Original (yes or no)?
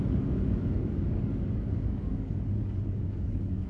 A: no